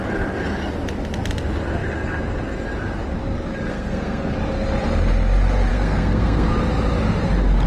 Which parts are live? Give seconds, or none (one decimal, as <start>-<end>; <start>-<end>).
0.0-3.7; 4.3-5.7; 6.5-7.7